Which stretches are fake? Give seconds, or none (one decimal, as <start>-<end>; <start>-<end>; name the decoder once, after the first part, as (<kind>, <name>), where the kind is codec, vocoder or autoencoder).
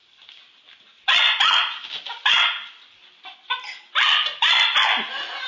none